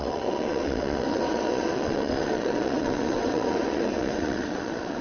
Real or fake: fake